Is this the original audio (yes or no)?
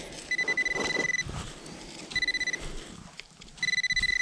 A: yes